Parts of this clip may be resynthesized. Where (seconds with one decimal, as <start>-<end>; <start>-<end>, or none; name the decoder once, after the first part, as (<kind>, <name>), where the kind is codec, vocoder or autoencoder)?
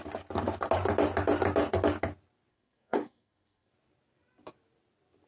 2.5-3.7 (codec, SNAC)